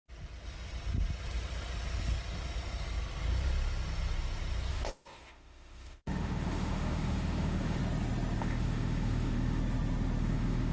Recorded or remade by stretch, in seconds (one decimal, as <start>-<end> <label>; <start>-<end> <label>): 0.0-4.7 recorded; 4.7-7.8 remade; 7.8-8.4 recorded; 8.4-9.6 remade; 9.6-10.2 recorded; 10.2-10.7 remade